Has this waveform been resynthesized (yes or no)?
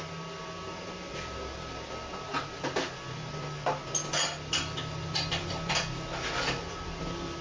no